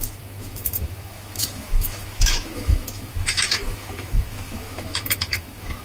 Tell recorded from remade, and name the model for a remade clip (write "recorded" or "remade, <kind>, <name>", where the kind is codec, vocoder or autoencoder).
remade, autoencoder, DAC-VAE